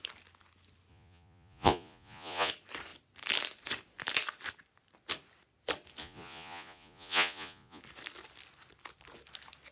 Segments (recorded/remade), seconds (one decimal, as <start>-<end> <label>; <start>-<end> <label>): 0.0-0.9 recorded; 0.9-2.5 remade; 2.5-6.0 recorded; 6.0-7.8 remade; 7.8-9.7 recorded